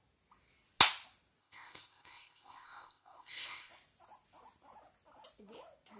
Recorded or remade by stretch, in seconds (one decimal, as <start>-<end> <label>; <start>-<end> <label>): 0.0-1.4 recorded; 1.4-3.7 remade; 3.7-6.0 recorded